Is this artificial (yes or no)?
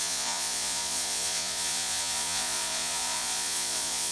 yes